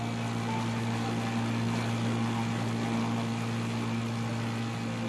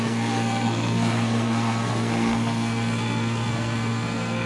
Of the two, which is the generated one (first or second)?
second